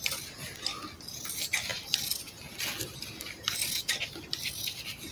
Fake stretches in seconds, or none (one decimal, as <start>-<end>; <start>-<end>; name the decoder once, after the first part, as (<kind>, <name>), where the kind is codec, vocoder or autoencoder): none